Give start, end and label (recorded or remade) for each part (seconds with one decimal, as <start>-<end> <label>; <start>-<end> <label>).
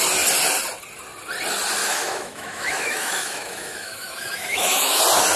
0.0-1.8 recorded; 1.8-5.0 remade; 5.0-5.4 recorded